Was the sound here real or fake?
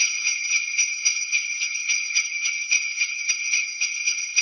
fake